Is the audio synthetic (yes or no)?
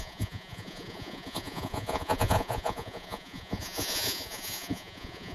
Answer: yes